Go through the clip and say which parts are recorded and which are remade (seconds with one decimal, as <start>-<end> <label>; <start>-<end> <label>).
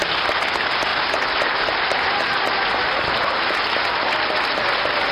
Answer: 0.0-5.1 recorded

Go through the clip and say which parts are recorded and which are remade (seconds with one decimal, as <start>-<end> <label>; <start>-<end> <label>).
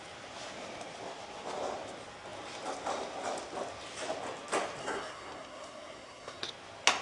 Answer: 0.0-4.8 recorded; 4.8-6.4 remade; 6.4-7.0 recorded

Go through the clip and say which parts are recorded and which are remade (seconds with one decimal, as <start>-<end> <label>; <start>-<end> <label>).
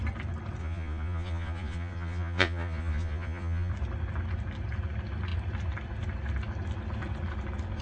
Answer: 0.0-0.6 recorded; 0.6-3.7 remade; 3.7-7.8 recorded